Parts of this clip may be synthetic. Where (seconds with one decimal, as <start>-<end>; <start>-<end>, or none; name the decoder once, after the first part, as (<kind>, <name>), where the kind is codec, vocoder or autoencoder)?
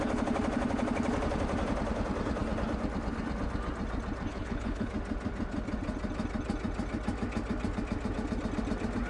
4.3-4.9 (codec, HILCodec)